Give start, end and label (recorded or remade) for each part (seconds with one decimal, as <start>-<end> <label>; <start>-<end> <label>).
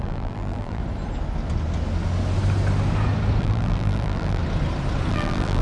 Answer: 0.0-0.8 remade; 0.8-3.4 recorded; 3.4-4.4 remade; 4.4-5.1 recorded; 5.1-5.6 remade